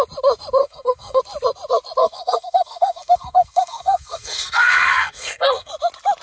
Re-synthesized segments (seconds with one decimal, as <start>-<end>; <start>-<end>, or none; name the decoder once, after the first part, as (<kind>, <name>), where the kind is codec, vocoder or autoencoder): 0.6-1.2 (codec, SNAC); 2.0-5.7